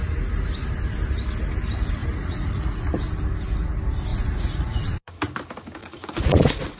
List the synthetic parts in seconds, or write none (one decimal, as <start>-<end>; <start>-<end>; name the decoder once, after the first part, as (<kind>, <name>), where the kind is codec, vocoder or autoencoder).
2.0-2.9 (vocoder, Vocos); 4.1-5.1; 5.8-6.8